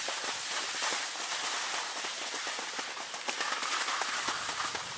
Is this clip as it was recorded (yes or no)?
yes